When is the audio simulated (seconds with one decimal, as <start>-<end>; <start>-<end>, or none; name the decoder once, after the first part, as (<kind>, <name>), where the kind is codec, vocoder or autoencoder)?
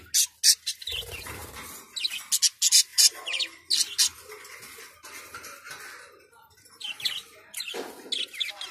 2.9-3.7 (vocoder, BigVGAN v2)